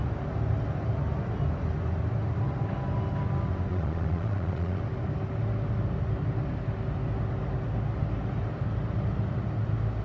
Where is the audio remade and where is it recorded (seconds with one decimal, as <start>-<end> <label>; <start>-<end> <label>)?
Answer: 0.0-3.7 recorded; 3.7-4.8 remade; 4.8-10.0 recorded